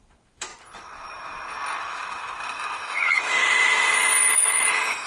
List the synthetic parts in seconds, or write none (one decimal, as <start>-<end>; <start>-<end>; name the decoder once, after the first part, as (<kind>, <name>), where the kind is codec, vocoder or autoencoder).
0.0-0.5 (autoencoder, DAC-VAE); 1.8-3.4; 4.3-5.1